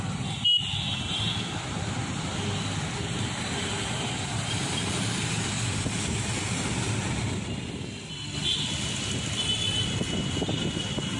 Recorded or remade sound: recorded